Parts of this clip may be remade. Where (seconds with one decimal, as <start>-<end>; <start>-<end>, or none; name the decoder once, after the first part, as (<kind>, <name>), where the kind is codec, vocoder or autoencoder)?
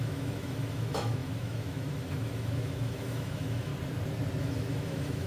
0.0-3.7 (autoencoder, DAC-VAE); 4.4-5.3